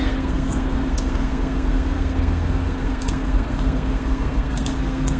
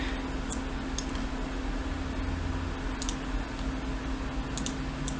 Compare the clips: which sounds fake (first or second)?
first